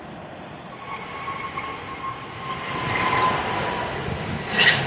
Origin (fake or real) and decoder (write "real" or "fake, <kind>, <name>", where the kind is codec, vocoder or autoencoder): real